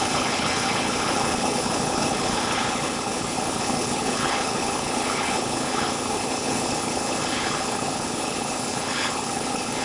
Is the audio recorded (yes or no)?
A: no